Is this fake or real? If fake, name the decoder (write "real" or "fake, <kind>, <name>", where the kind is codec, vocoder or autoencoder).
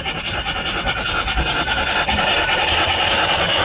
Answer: real